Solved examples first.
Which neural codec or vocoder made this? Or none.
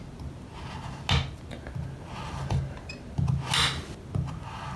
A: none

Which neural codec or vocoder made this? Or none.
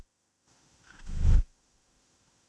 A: autoencoder, DAC-VAE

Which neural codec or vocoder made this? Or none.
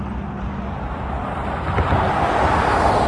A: none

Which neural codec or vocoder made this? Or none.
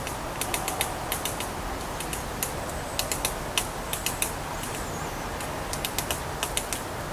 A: none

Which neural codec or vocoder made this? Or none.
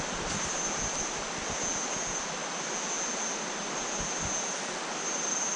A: none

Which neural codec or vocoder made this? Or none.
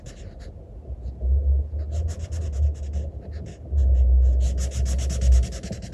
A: none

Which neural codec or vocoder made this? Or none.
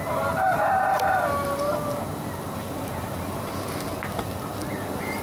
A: none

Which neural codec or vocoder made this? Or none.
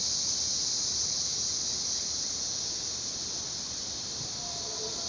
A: none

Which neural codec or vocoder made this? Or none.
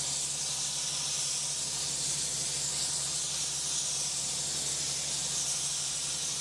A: none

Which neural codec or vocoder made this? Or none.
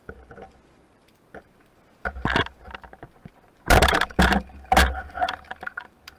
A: none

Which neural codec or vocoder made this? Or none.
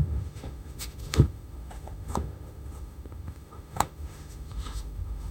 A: autoencoder, DAC-VAE